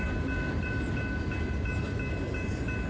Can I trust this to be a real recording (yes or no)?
yes